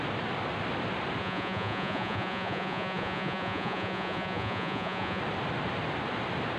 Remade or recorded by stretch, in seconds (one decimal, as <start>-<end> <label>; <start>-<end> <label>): 0.0-1.2 recorded; 1.2-5.2 remade; 5.2-6.6 recorded